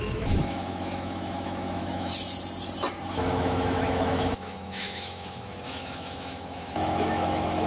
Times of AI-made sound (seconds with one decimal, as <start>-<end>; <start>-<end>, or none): 0.0-2.1; 3.1-7.7